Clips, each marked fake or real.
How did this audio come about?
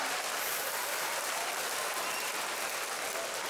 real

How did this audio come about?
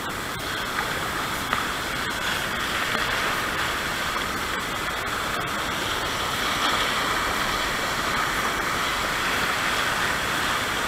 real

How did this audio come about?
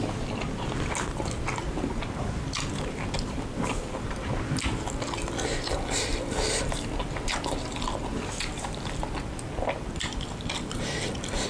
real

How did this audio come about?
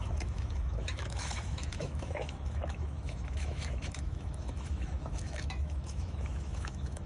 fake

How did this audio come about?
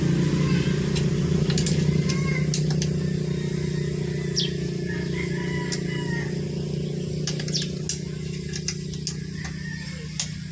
real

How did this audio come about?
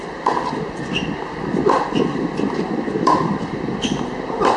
fake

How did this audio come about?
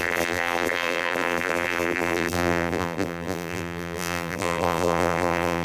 fake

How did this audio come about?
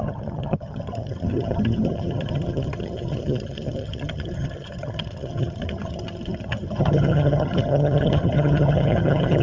fake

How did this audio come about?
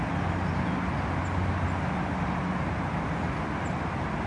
real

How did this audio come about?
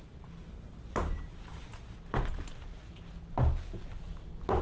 real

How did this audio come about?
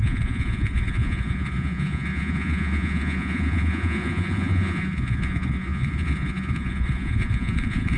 fake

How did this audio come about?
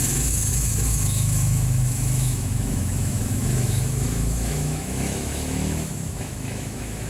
fake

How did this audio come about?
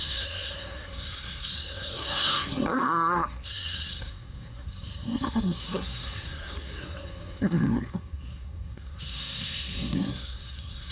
fake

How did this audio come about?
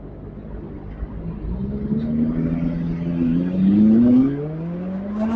real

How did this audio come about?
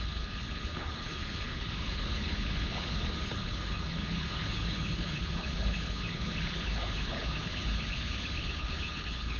fake